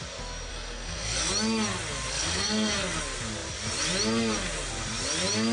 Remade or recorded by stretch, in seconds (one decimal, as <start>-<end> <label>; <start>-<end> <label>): 0.0-0.5 recorded; 0.5-1.3 remade; 1.3-2.1 recorded; 2.1-3.0 remade; 3.0-5.5 recorded